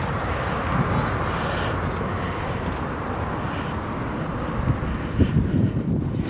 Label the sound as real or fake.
real